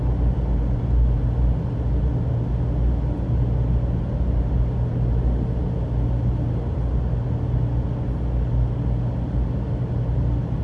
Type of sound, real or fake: real